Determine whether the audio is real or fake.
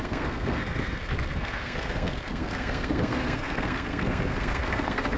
fake